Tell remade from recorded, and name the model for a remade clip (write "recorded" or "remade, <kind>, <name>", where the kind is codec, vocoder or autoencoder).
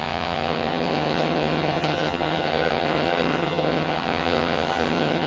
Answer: remade, vocoder, HiFi-GAN